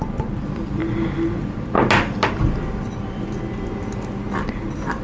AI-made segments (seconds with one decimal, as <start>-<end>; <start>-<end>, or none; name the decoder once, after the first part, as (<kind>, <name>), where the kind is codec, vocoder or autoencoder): none